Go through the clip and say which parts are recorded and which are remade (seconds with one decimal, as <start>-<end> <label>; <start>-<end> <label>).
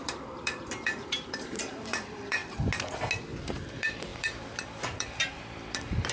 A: 0.0-2.4 remade; 2.4-3.4 recorded; 3.4-6.1 remade